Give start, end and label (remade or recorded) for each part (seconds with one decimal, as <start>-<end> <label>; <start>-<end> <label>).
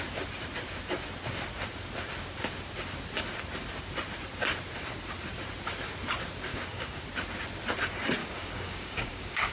0.0-6.5 recorded; 6.5-7.0 remade; 7.0-8.2 recorded; 8.2-9.5 remade